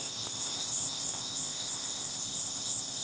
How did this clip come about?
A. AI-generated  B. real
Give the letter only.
A